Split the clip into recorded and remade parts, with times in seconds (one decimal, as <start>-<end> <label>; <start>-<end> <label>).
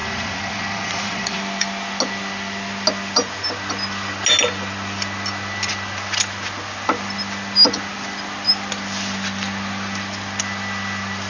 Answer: 0.0-1.4 remade; 1.4-11.3 recorded